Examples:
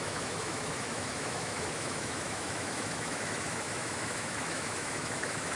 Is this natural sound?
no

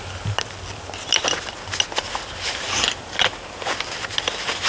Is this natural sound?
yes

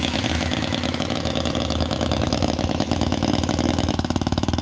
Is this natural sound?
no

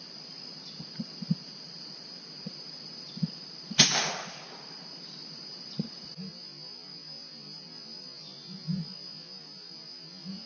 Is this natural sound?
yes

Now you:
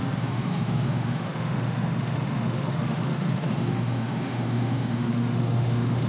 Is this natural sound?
no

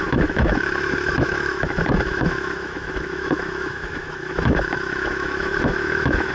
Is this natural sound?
no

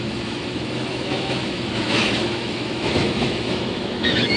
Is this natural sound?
no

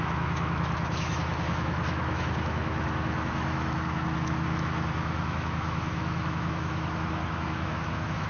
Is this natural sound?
no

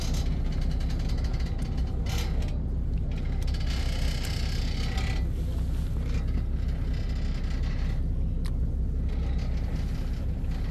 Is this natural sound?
yes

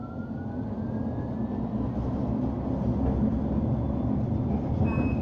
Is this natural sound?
yes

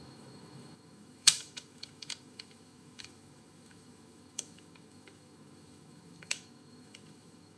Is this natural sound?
no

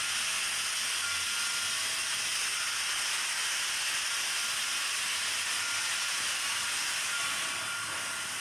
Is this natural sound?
yes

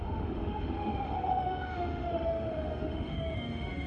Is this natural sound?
no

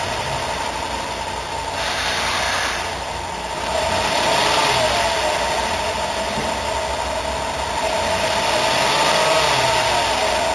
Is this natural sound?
yes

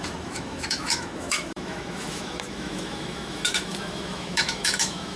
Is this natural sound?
no